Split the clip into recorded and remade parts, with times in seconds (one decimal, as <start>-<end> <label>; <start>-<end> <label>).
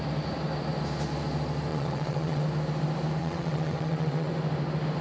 0.0-1.7 recorded; 1.7-2.4 remade; 2.4-3.2 recorded; 3.2-4.3 remade; 4.3-5.0 recorded